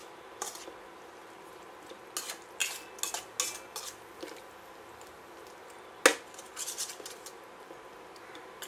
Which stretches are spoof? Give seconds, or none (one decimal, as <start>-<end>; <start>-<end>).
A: 0.0-2.1